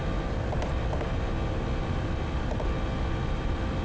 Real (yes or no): yes